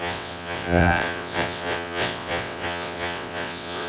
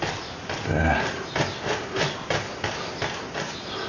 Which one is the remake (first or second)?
first